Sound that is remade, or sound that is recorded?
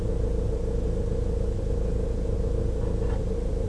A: recorded